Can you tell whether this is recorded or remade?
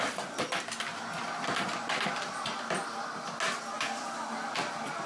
recorded